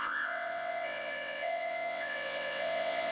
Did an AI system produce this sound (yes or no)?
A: yes